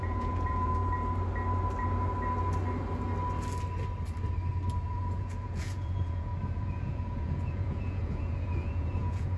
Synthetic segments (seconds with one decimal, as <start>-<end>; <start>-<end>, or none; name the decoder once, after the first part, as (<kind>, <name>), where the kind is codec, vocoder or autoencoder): 0.0-0.8 (vocoder, Vocos); 4.9-9.4